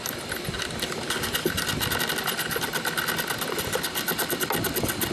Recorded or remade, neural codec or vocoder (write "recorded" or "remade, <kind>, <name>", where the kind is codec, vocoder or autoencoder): recorded